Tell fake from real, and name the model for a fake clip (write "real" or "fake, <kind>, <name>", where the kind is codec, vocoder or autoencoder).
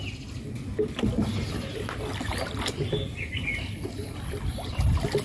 real